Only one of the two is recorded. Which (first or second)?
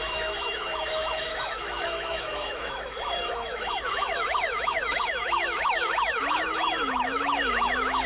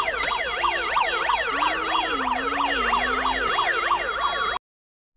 second